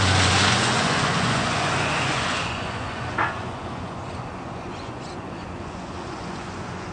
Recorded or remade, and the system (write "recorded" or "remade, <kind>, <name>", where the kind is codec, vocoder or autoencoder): remade, vocoder, Vocos